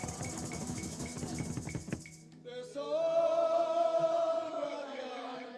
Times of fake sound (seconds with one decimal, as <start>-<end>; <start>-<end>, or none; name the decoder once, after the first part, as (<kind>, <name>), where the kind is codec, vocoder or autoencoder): 0.6-1.1 (autoencoder, DAC-VAE); 4.5-5.6